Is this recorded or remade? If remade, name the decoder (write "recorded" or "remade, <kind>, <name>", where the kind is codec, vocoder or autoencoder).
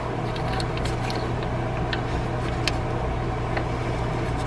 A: recorded